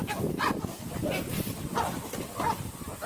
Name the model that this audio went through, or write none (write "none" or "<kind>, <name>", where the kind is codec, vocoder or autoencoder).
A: none